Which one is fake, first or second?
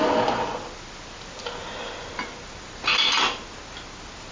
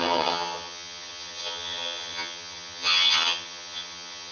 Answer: second